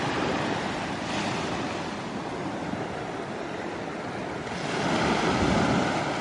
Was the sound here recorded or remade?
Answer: recorded